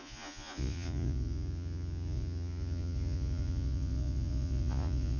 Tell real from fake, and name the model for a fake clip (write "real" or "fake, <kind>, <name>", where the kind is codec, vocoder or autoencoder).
fake, vocoder, Vocos